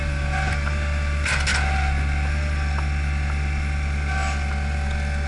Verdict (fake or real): real